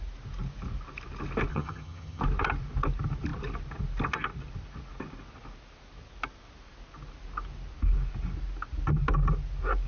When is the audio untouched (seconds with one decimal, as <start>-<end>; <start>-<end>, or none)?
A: 0.0-1.5; 2.2-9.9